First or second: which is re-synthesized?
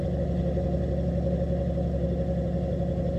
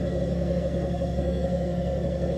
second